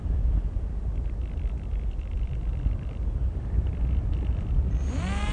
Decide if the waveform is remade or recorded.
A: recorded